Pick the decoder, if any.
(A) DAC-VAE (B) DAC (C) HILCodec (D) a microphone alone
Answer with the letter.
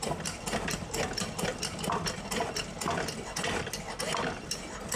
D